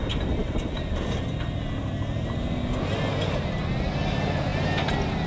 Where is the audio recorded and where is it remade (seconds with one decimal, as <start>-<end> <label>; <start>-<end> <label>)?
0.0-5.3 recorded